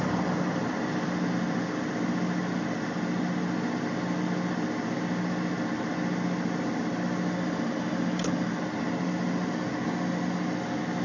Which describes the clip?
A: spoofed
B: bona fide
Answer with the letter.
B